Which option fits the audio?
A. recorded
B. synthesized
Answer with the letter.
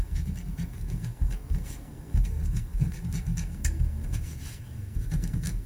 B